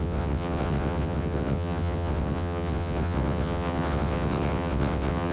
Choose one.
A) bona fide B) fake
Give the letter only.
B